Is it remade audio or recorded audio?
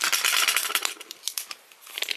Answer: remade